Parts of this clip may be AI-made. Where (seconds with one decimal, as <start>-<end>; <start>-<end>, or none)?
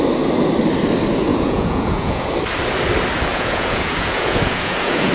1.3-2.3; 3.3-5.1